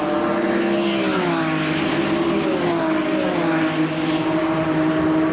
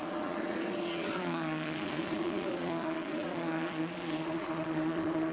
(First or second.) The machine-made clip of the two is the second